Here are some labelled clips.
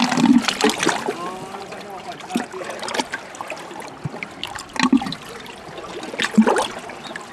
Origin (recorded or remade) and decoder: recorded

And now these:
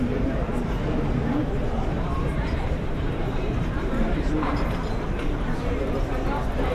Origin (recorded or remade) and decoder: remade, vocoder, BigVGAN v2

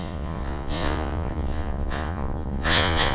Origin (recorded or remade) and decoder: remade, vocoder, Vocos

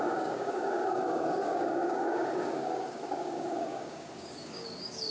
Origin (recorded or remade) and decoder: remade, codec, DAC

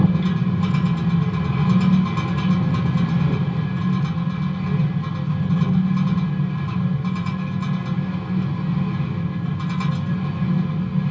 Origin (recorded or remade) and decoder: recorded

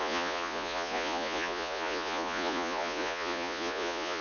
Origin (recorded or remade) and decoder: remade, vocoder, Vocos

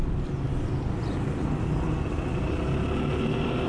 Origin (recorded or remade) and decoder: recorded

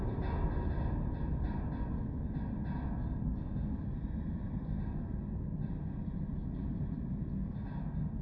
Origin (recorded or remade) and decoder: recorded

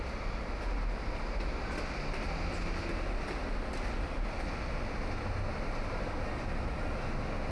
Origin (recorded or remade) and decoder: recorded